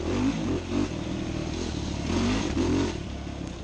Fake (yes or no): no